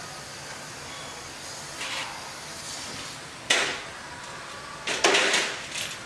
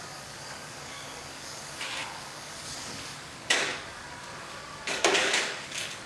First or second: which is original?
first